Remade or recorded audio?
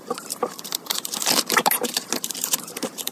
remade